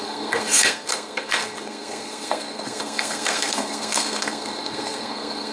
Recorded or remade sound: remade